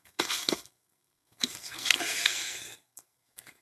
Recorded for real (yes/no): no